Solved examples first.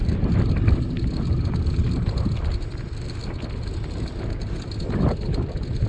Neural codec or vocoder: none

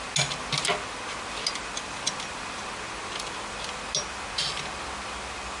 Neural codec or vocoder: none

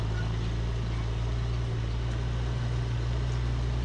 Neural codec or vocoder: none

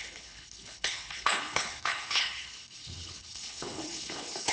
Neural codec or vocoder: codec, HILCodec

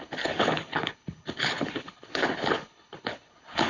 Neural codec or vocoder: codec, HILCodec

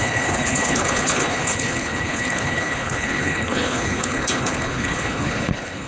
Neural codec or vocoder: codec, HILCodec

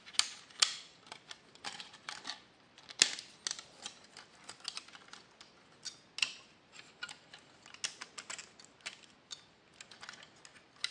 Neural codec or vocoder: none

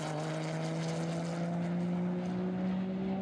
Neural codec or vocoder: none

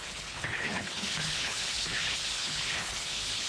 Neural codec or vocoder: codec, HILCodec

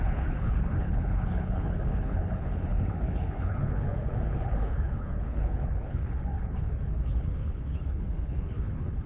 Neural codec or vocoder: codec, HILCodec